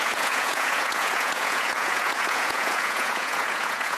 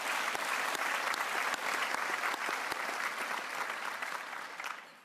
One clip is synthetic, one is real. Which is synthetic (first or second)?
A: first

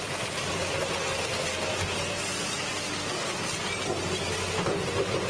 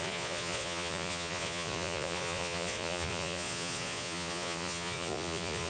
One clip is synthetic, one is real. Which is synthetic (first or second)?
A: second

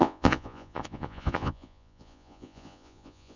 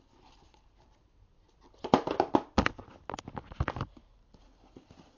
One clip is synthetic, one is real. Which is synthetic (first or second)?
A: first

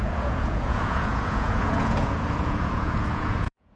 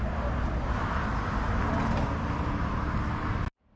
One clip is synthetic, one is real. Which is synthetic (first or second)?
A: first